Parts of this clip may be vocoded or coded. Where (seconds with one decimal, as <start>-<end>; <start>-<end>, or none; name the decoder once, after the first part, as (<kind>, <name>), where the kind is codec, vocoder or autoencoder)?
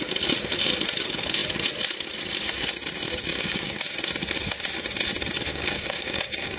3.3-3.8 (codec, DAC); 5.5-6.6